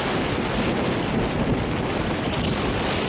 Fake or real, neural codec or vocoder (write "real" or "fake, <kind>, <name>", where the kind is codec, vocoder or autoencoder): real